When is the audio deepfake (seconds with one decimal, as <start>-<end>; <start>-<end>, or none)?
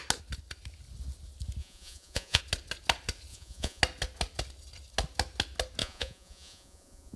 1.6-2.4; 3.3-3.8; 5.8-7.2